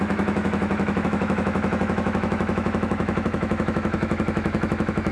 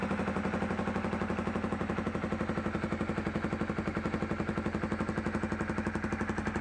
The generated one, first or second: first